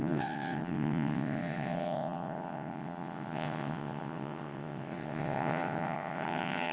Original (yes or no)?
no